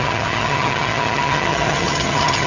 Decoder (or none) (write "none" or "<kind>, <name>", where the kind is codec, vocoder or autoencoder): vocoder, HiFi-GAN